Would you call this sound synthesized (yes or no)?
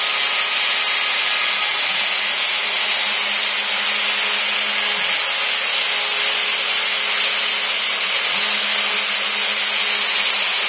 no